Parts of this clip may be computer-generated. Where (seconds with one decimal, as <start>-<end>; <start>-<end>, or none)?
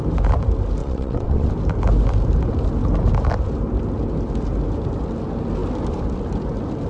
0.8-1.5